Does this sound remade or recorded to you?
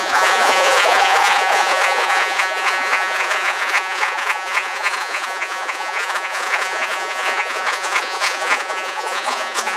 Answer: remade